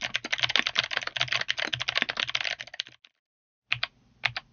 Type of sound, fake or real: real